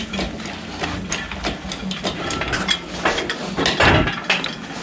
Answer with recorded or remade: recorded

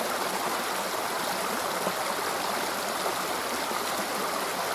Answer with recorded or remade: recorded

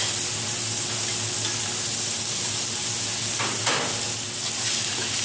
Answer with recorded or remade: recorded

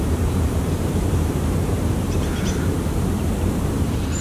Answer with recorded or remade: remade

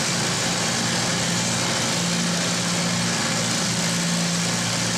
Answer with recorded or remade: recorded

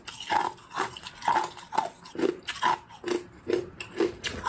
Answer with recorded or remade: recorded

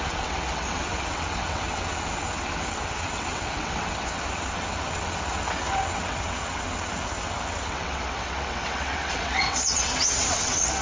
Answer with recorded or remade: remade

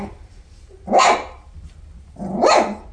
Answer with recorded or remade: recorded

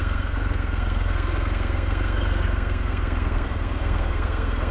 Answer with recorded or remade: remade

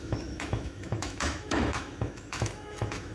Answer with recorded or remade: remade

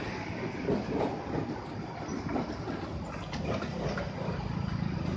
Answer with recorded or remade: recorded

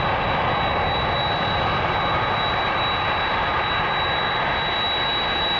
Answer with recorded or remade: recorded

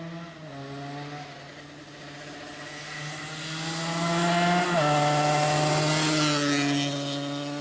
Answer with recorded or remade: recorded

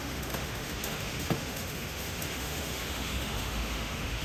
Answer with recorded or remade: remade